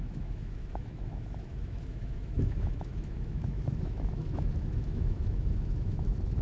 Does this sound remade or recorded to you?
remade